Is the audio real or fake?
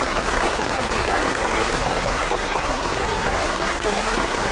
fake